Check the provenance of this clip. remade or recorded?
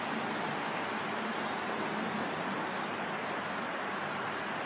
recorded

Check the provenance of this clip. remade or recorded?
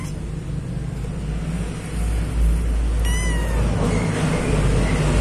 recorded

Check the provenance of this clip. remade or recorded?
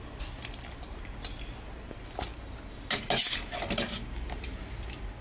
recorded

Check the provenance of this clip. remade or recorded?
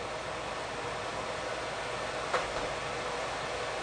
recorded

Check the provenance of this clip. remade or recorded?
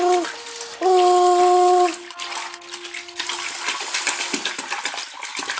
recorded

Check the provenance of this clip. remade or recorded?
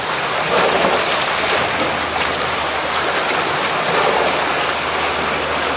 recorded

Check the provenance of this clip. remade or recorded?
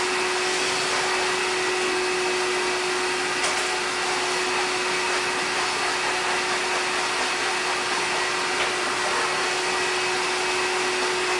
recorded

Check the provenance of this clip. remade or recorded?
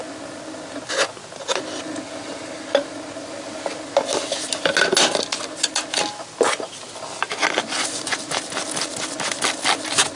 recorded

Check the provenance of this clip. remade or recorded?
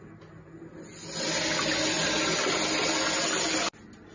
recorded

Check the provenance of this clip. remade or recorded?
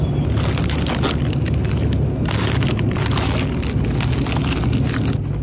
recorded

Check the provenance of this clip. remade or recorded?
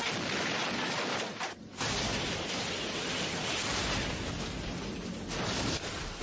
recorded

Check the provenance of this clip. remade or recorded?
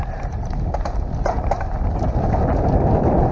recorded